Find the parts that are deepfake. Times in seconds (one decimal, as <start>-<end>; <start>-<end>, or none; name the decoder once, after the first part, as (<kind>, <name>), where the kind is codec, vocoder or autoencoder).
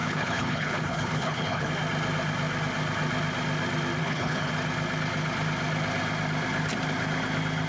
0.0-1.7 (codec, HILCodec); 4.0-4.5